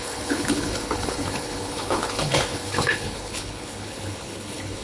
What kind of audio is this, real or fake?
fake